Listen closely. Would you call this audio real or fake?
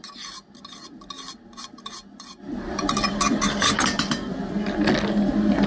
real